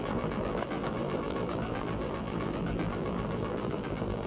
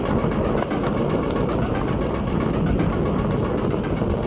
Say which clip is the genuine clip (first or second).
second